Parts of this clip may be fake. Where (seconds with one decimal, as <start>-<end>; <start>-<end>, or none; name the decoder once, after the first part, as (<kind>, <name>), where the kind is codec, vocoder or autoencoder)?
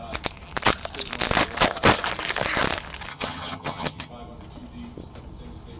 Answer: 3.1-4.1 (vocoder, HiFi-GAN)